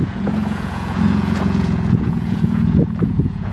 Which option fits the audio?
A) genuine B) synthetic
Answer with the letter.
B